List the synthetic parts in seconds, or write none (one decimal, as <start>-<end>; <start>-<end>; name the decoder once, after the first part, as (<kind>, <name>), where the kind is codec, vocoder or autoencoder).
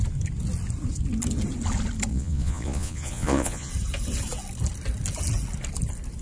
2.1-3.7 (vocoder, Vocos)